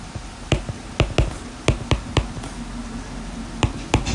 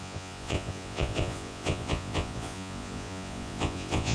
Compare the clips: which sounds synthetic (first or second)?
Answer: second